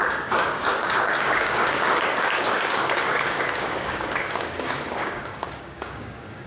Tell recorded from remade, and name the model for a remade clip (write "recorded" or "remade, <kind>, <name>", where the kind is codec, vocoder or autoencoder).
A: remade, codec, DAC